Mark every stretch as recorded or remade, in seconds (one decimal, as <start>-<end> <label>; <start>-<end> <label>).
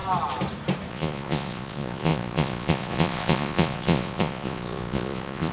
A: 0.0-0.9 recorded; 0.9-5.5 remade